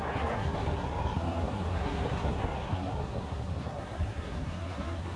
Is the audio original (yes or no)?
no